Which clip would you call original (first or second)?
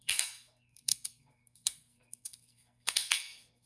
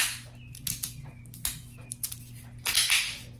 second